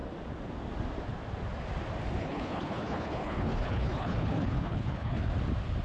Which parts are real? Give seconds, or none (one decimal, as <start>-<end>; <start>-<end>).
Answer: 0.0-2.2; 5.3-5.8